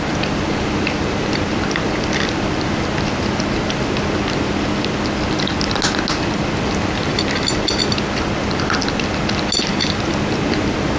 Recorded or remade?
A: recorded